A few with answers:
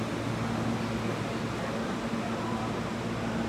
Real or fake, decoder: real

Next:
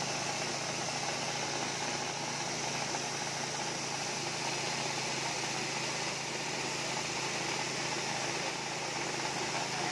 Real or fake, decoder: real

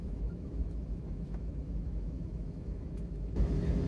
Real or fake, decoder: fake, autoencoder, DAC-VAE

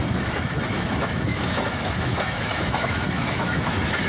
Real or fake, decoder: fake, autoencoder, DAC-VAE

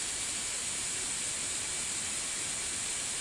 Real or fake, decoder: real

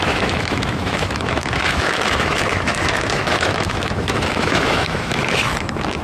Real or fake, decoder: fake, autoencoder, DAC-VAE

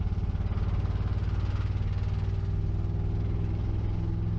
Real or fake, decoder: real